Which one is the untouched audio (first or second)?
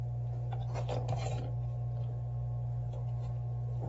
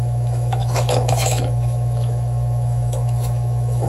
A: first